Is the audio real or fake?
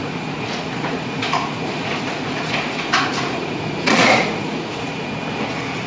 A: fake